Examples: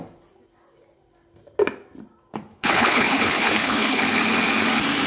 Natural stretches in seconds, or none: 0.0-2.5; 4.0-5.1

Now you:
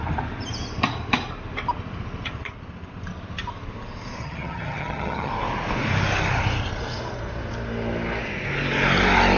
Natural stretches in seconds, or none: 0.0-4.2; 5.3-9.4

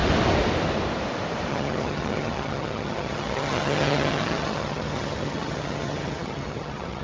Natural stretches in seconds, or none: 0.0-1.5

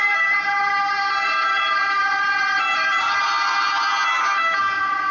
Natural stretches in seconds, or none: 0.0-5.1

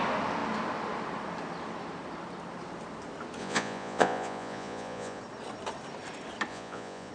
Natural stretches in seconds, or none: 0.0-3.4; 5.2-6.5

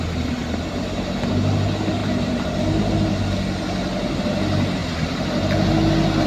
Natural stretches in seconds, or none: 0.0-2.0; 2.6-4.8; 5.7-6.3

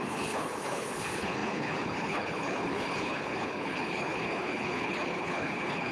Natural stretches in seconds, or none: none